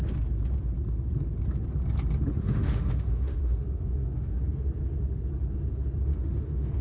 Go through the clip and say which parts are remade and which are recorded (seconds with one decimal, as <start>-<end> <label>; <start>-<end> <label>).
0.0-2.4 recorded; 2.4-4.4 remade; 4.4-6.1 recorded; 6.1-6.8 remade